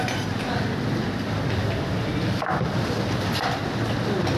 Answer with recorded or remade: recorded